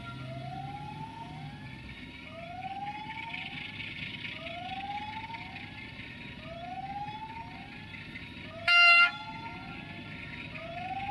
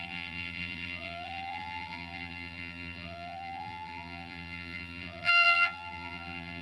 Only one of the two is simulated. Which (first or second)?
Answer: second